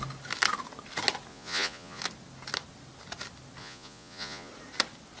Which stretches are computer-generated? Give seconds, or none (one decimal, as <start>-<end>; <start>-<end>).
1.3-2.0; 3.6-4.5